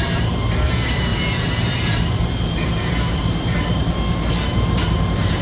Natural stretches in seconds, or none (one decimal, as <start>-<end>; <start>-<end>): none